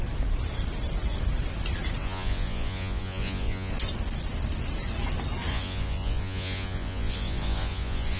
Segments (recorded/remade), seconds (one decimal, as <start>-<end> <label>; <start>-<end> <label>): 0.0-2.0 recorded; 2.0-3.7 remade; 3.7-5.5 recorded; 5.5-8.2 remade